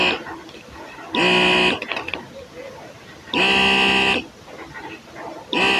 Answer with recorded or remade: recorded